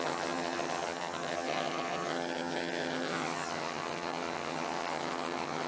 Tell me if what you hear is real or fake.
fake